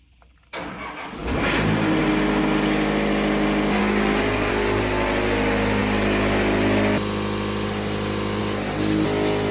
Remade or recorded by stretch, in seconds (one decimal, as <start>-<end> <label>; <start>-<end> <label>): 0.0-1.2 recorded; 1.2-2.0 remade; 2.0-9.5 recorded